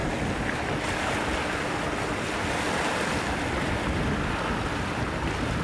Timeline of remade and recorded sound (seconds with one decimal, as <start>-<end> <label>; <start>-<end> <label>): 0.0-5.6 recorded